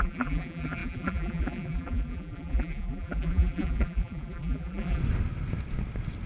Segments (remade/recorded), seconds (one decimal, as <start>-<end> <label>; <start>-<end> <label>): 0.0-5.0 remade; 5.0-6.3 recorded